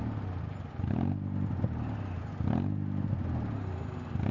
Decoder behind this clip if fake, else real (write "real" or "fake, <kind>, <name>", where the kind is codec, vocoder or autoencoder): real